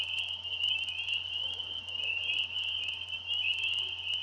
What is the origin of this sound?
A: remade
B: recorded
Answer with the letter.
B